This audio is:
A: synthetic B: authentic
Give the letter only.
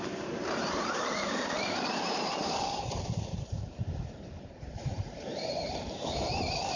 A